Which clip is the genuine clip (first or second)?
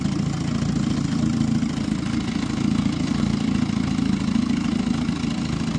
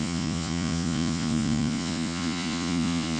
first